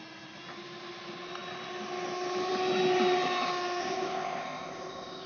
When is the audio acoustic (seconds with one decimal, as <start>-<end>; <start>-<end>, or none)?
0.0-3.8